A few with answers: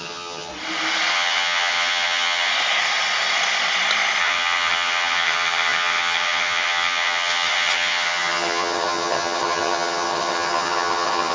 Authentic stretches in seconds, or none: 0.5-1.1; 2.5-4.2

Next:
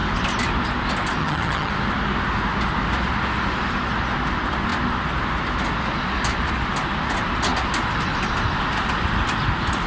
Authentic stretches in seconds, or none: 0.0-1.2; 1.7-9.9

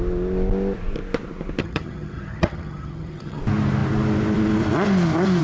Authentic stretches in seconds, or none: 0.0-1.6; 3.4-5.4

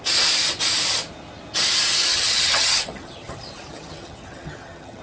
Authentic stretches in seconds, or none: 0.0-2.1

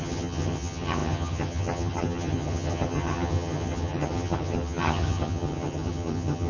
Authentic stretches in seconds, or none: none